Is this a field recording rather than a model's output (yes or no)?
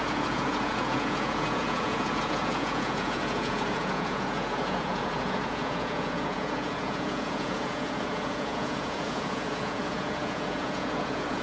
no